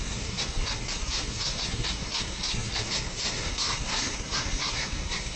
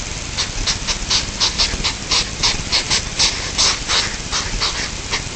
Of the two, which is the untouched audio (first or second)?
second